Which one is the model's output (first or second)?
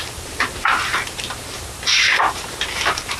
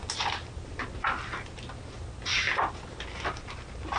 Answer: first